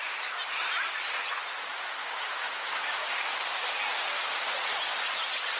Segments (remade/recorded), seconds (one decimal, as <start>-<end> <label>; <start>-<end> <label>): 0.0-2.0 recorded; 2.0-3.1 remade; 3.1-5.6 recorded